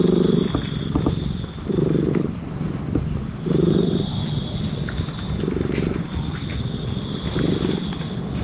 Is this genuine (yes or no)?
yes